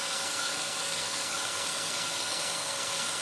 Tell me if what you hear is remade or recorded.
remade